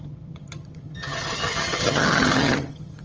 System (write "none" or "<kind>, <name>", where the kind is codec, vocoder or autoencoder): vocoder, HiFi-GAN